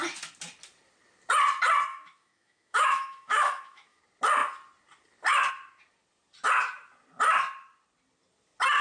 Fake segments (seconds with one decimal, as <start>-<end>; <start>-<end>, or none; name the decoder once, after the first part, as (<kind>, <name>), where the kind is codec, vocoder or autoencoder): 1.9-4.0 (autoencoder, DAC-VAE)